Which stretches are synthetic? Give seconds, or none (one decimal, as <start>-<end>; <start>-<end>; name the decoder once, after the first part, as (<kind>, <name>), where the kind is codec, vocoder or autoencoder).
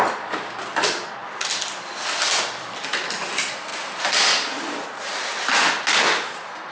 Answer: none